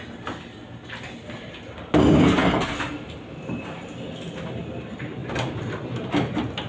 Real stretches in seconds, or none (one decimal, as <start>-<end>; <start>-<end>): 0.0-6.7